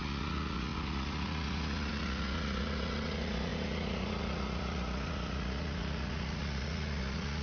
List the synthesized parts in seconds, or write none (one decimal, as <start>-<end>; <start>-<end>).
0.0-7.4